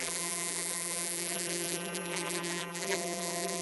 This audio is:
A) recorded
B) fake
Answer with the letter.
B